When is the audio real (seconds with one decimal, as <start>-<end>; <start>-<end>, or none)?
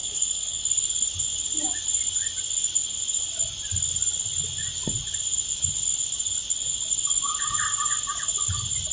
0.6-8.9